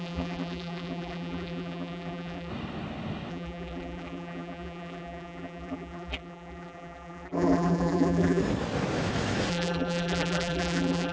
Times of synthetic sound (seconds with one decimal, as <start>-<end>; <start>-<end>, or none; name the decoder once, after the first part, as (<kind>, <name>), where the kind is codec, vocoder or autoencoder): 0.0-2.5 (vocoder, BigVGAN v2); 3.3-8.4; 9.5-11.1